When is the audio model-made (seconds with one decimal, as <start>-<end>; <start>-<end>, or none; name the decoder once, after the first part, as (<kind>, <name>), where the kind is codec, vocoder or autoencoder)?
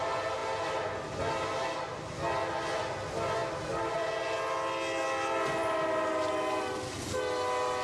none